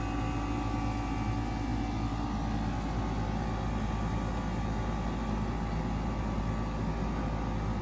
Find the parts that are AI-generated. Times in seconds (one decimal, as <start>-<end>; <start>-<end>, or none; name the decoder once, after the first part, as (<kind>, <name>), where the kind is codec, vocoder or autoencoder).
none